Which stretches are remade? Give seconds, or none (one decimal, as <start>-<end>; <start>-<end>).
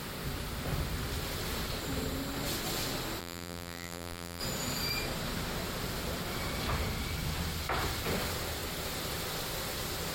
3.2-4.4